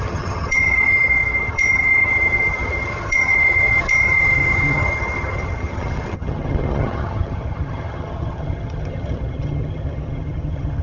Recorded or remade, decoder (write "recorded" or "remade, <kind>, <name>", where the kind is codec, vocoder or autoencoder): remade, vocoder, HiFi-GAN